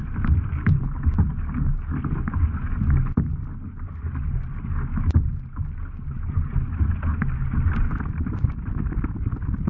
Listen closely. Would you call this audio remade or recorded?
recorded